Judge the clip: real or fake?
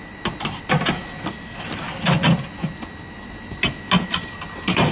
real